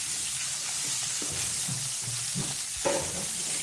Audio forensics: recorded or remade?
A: recorded